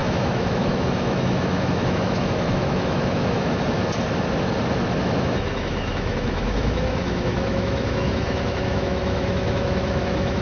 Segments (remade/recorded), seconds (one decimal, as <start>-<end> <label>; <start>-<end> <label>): 0.0-3.8 remade; 3.8-5.0 recorded; 5.0-10.4 remade